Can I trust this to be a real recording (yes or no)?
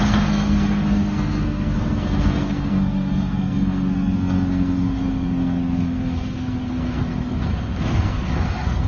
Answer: no